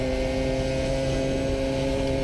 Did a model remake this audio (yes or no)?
no